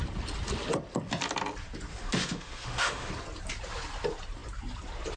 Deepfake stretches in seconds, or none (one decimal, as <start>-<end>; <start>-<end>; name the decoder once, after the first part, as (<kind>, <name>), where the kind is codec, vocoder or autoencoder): 1.9-3.1 (autoencoder, DAC-VAE)